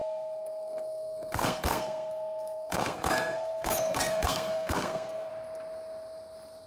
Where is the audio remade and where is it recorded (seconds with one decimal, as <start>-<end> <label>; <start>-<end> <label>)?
0.0-5.3 remade; 5.3-6.7 recorded

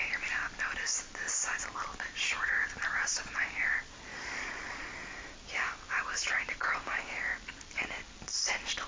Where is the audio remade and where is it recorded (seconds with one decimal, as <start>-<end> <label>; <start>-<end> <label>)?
0.0-4.1 recorded; 4.1-5.1 remade; 5.1-8.9 recorded